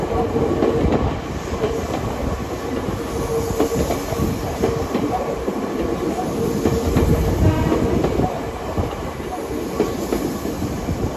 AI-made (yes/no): no